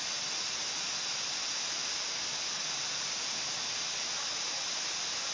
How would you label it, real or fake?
real